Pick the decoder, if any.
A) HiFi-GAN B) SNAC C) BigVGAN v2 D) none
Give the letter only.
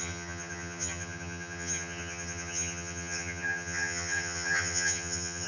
A